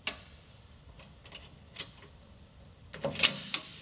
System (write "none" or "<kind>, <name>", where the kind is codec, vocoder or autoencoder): none